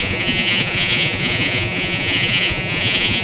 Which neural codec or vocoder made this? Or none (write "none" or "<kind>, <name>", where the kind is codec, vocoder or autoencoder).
vocoder, Vocos